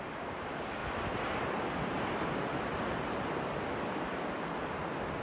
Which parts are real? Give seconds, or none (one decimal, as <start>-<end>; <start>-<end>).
0.0-5.2